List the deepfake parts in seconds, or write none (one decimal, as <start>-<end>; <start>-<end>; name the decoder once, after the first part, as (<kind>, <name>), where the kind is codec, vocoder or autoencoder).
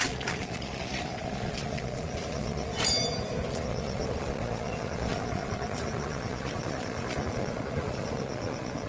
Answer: 0.0-2.7 (vocoder, Vocos); 3.5-8.9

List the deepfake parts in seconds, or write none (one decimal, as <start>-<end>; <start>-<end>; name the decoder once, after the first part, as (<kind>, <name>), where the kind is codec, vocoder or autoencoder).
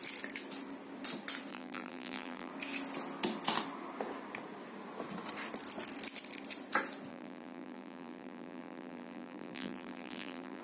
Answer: 1.5-2.5 (vocoder, BigVGAN v2); 7.1-10.6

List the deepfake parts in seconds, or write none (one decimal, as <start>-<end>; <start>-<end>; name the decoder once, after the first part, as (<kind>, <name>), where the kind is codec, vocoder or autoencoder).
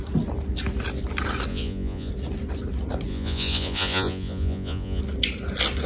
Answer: 1.5-2.1 (vocoder, Vocos); 3.1-5.0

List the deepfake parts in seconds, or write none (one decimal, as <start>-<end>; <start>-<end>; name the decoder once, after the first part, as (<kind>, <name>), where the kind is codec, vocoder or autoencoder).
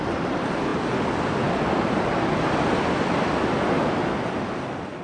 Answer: none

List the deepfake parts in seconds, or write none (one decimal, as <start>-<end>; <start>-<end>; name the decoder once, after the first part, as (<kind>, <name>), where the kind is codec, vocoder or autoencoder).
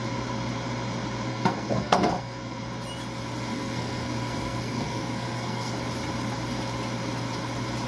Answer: 1.3-2.6 (codec, SNAC); 3.5-5.7